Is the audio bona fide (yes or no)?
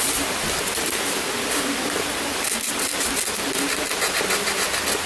yes